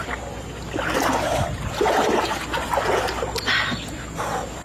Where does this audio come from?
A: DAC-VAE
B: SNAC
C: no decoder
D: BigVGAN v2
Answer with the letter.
C